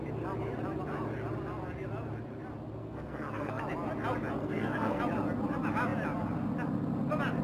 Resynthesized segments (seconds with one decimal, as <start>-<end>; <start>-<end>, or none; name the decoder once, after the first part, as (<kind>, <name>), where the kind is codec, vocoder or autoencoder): 2.8-3.6 (codec, SNAC); 4.4-5.0